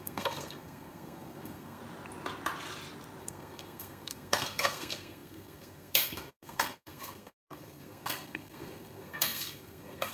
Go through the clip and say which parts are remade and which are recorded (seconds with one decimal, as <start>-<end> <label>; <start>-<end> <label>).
0.0-1.8 remade; 1.8-3.2 recorded; 3.2-10.1 remade